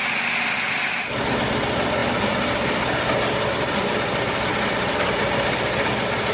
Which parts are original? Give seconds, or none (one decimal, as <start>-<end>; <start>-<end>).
0.0-2.0; 5.0-6.3